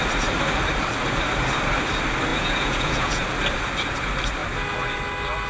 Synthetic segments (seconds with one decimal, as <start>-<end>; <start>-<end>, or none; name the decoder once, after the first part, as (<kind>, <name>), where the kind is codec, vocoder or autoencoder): 2.3-3.2 (vocoder, Vocos)